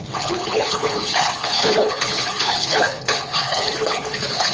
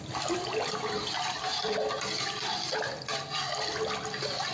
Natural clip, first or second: second